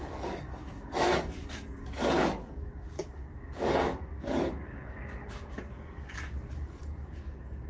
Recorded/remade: remade